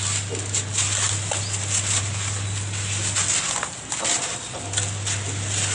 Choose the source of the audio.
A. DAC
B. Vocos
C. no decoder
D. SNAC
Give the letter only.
C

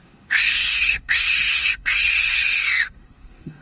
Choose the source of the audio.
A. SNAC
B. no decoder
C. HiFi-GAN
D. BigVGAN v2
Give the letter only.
A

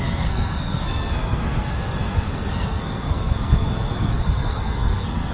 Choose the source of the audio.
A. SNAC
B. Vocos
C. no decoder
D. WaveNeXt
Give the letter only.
A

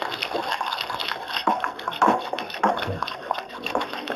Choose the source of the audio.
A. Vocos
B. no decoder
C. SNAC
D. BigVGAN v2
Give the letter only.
C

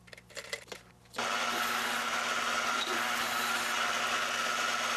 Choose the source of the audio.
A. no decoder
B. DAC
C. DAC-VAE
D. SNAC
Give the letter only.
A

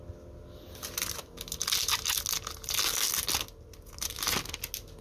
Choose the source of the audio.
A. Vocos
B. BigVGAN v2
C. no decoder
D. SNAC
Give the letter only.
C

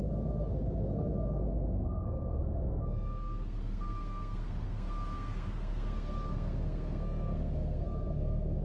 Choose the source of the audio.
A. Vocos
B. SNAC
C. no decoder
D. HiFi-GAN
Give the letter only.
B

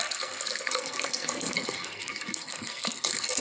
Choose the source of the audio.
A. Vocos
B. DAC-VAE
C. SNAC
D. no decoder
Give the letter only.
C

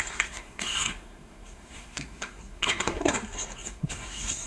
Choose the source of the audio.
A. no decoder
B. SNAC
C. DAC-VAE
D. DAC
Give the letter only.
B